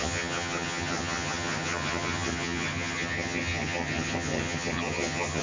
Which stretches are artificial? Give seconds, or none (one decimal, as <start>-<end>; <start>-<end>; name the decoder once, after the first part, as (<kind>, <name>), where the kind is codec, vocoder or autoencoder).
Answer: 0.0-5.4 (vocoder, HiFi-GAN)